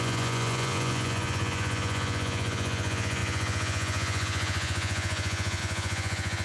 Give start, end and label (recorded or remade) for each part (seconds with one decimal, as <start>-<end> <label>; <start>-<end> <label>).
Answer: 0.0-6.4 remade